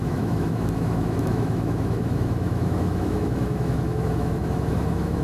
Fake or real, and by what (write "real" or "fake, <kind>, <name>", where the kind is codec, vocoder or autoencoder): fake, autoencoder, DAC-VAE